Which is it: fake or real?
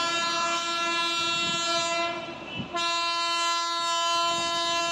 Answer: real